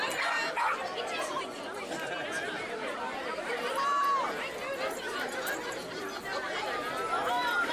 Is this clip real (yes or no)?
yes